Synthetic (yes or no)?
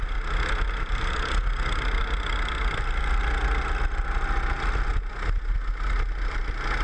no